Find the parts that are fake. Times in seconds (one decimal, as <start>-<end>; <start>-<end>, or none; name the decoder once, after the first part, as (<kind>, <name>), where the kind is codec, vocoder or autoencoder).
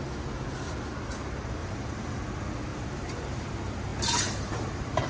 1.6-2.2 (vocoder, BigVGAN v2); 2.7-3.4; 3.9-5.1